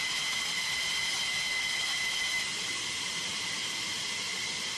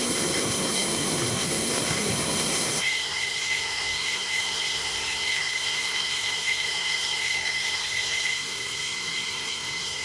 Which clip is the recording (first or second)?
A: first